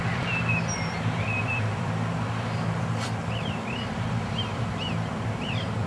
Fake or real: fake